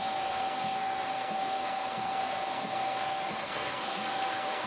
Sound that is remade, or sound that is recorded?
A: remade